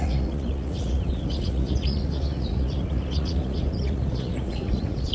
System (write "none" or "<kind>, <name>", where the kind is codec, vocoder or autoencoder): vocoder, Vocos